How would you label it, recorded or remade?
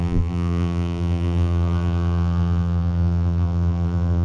remade